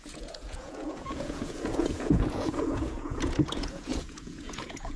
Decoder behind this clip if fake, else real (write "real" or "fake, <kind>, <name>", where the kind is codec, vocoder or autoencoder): fake, vocoder, Vocos